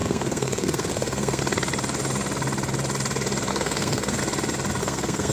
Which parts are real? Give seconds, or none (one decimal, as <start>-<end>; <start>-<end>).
1.4-3.5; 4.2-4.8